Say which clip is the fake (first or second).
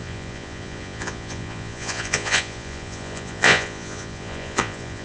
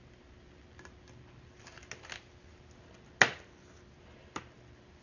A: first